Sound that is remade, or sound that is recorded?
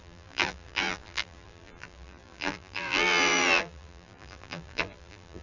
remade